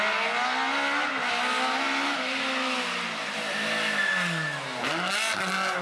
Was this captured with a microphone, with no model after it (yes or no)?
yes